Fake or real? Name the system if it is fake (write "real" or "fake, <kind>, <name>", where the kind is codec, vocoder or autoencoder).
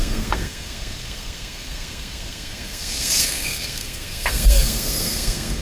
fake, codec, SNAC